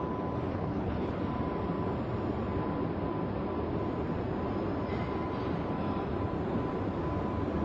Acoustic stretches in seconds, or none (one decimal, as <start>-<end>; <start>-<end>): 0.0-0.5; 1.2-7.6